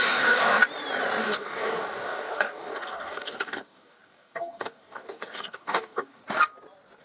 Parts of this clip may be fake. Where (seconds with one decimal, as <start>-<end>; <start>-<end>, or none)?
0.0-0.6; 1.2-6.2